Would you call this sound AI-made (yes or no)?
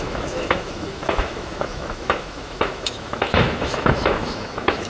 yes